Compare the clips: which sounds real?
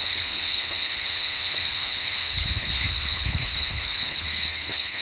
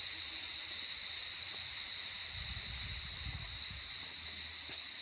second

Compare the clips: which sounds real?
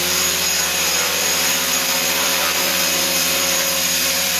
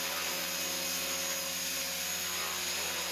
second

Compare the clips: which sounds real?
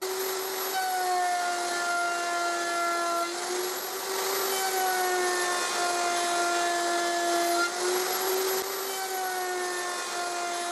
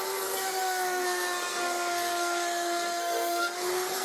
first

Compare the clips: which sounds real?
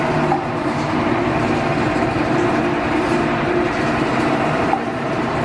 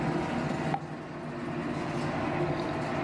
second